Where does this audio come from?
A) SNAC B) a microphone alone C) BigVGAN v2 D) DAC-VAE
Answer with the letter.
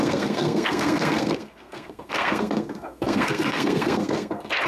A